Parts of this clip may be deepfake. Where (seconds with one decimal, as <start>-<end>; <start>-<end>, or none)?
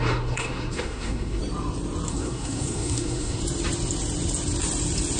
0.0-1.4; 2.1-3.4